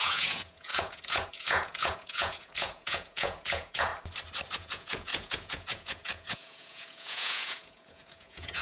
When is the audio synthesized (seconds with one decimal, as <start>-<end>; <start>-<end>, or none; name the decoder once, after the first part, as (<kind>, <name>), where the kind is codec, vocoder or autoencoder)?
0.0-3.9 (vocoder, Vocos); 4.5-8.6

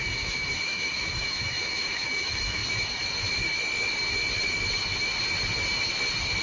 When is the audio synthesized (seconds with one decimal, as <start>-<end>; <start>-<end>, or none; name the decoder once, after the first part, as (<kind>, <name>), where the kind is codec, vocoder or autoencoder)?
0.0-2.6 (autoencoder, DAC-VAE)